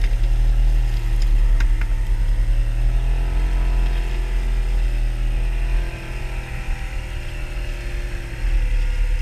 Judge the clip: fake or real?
real